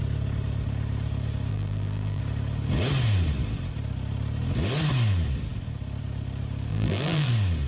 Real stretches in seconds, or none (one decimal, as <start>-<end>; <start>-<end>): 0.0-1.5; 2.2-6.7; 7.3-7.7

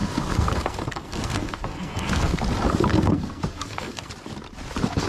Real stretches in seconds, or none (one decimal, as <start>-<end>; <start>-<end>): 2.4-2.9; 4.1-5.1

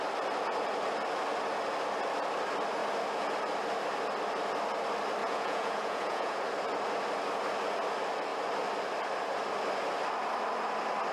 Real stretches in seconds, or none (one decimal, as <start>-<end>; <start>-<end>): 0.0-5.2; 6.4-11.1

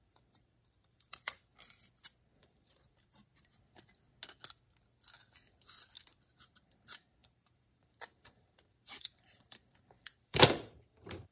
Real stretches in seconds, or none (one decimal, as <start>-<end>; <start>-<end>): 1.5-2.4; 3.3-6.3